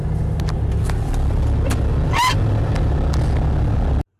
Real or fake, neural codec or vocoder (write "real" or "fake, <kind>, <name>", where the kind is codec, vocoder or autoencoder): real